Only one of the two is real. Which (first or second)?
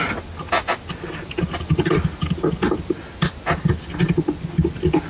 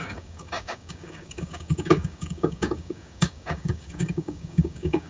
first